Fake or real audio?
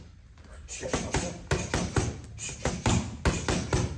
real